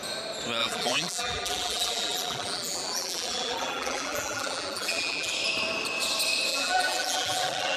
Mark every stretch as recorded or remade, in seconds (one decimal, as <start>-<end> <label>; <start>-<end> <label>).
0.0-0.6 recorded; 0.6-5.3 remade; 5.3-6.5 recorded; 6.5-7.8 remade